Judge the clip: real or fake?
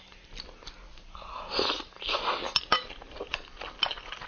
real